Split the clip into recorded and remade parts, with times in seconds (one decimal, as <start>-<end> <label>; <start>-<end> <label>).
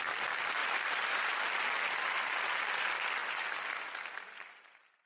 0.0-0.6 recorded; 0.6-1.6 remade; 1.6-5.1 recorded